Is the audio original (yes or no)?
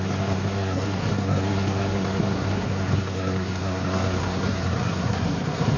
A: no